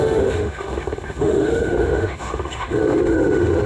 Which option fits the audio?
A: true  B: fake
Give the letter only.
B